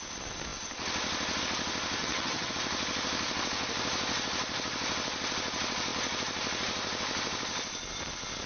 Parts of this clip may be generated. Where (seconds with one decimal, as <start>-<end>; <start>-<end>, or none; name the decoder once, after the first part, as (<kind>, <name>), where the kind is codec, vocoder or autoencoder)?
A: 2.0-2.5 (vocoder, HiFi-GAN)